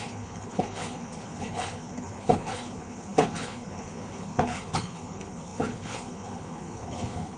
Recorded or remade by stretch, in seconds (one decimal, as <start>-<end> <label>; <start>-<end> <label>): 0.0-7.4 remade

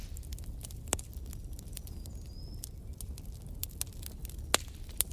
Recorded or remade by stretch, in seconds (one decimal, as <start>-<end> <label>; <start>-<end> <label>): 0.0-5.1 recorded

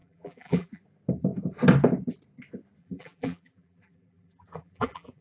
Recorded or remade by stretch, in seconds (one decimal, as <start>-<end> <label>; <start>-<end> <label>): 0.0-0.8 remade; 0.8-2.8 recorded; 2.8-5.2 remade